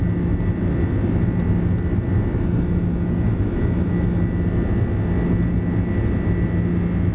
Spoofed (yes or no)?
no